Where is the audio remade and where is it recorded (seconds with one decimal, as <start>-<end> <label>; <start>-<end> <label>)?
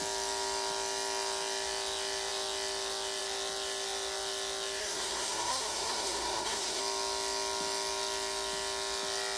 0.0-4.8 recorded; 4.8-6.8 remade; 6.8-9.4 recorded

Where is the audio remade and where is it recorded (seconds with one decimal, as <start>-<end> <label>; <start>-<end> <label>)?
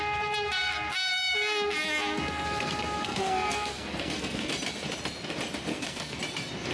0.0-1.8 recorded; 1.8-4.5 remade; 4.5-5.7 recorded; 5.7-6.2 remade; 6.2-6.7 recorded